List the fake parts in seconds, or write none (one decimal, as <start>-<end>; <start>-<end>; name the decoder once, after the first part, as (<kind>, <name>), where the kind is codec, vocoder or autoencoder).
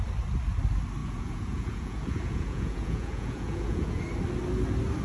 1.0-4.0 (vocoder, Vocos)